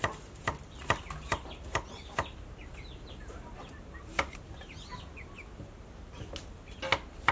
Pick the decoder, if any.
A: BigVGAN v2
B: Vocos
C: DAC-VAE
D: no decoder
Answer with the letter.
D